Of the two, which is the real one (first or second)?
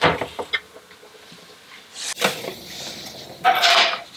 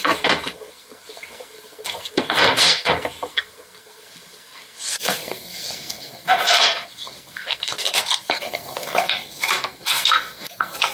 first